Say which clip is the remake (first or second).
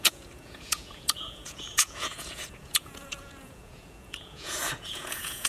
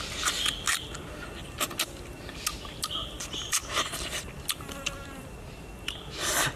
first